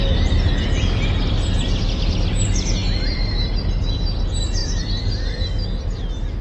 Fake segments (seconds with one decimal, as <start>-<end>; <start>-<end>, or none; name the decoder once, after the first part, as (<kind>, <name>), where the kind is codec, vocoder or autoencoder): none